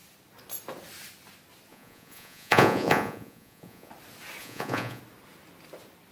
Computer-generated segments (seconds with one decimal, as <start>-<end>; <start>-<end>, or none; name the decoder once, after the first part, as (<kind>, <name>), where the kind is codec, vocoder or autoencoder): 1.7-3.9 (vocoder, Vocos); 4.4-5.0